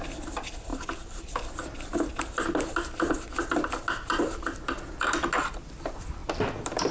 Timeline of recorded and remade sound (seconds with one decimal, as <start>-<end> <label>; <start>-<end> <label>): 0.0-6.9 recorded